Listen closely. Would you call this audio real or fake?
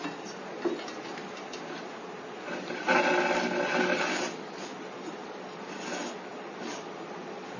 real